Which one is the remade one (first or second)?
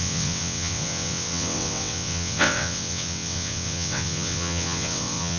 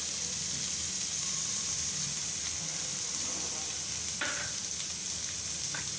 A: first